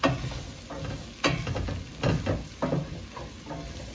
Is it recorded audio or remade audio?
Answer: recorded